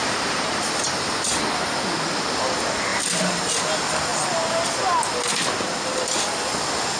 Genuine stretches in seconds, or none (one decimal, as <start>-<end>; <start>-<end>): 1.3-2.9; 3.5-7.0